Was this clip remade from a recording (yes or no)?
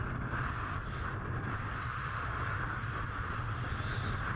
no